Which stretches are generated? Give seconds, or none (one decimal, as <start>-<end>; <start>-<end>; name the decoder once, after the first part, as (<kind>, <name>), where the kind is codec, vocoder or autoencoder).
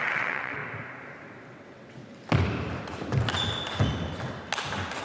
0.0-0.6 (vocoder, WaveNeXt); 1.4-2.0